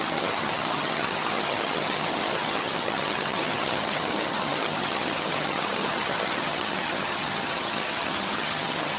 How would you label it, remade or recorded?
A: remade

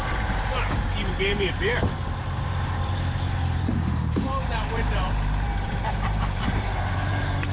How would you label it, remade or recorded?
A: remade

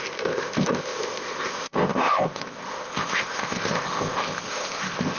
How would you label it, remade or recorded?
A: remade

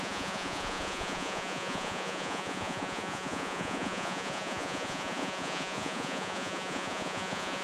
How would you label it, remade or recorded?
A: remade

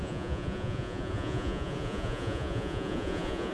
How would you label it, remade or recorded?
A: remade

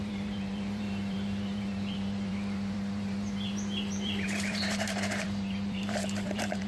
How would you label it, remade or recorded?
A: remade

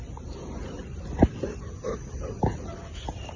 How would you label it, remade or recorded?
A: recorded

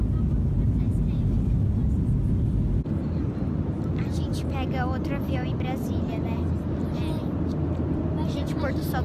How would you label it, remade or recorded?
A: recorded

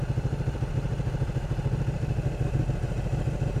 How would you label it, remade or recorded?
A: remade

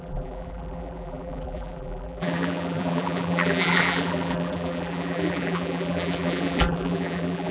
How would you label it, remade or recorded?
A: remade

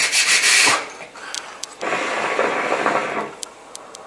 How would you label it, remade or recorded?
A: recorded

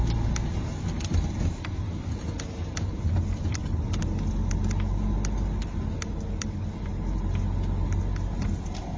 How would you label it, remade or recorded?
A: recorded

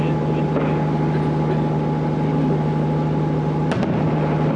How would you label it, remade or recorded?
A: recorded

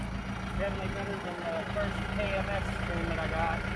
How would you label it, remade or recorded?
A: recorded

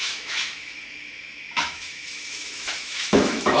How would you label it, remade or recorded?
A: remade